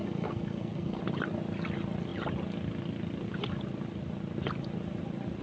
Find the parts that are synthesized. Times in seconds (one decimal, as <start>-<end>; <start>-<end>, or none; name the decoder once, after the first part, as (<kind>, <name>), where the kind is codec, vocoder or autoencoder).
0.0-1.0 (codec, SNAC)